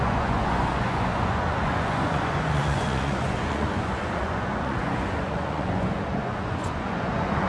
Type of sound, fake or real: fake